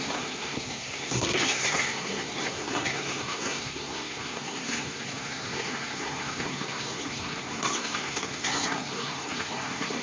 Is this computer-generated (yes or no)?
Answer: yes